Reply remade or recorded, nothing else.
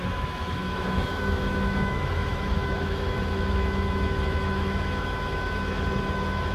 remade